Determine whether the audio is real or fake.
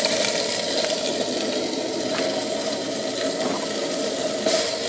real